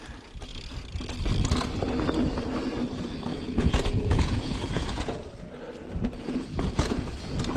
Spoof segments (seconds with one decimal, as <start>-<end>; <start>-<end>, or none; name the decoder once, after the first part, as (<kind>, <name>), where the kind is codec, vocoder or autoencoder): 3.3-5.3 (vocoder, Vocos); 5.8-7.1